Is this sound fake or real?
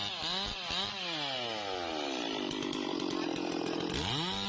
real